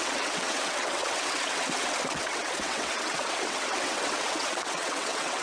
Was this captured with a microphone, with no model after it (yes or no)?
no